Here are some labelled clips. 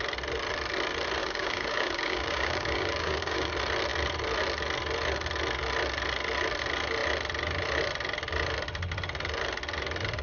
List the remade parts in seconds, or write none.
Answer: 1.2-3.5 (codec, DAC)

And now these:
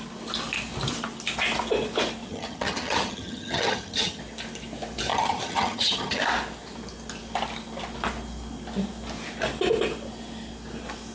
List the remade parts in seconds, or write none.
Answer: 2.3-4.2 (vocoder, HiFi-GAN); 5.1-6.2